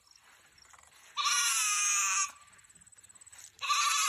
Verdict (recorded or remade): recorded